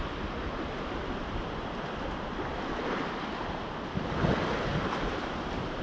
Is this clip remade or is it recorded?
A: recorded